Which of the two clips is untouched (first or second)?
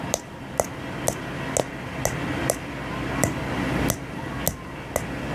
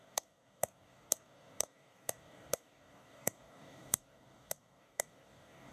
first